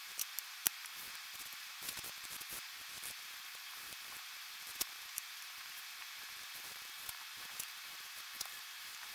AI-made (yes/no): yes